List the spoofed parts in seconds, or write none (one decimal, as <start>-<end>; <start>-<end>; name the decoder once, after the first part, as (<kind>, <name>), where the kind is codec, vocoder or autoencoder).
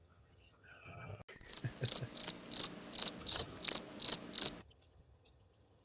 0.0-1.1 (vocoder, HiFi-GAN); 3.2-3.6; 4.6-5.8